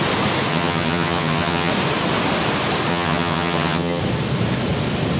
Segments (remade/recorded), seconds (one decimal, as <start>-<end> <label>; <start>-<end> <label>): 0.0-0.5 recorded; 0.5-1.7 remade; 1.7-2.9 recorded; 2.9-4.0 remade; 4.0-5.2 recorded